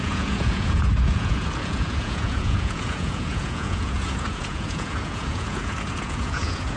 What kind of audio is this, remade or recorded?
remade